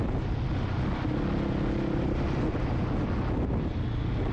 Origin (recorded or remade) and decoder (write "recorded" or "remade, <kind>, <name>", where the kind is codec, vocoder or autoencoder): recorded